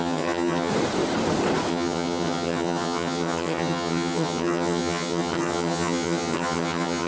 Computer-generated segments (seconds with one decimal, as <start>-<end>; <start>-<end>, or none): 0.0-0.7; 1.7-7.1